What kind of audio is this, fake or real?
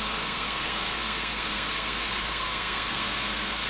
fake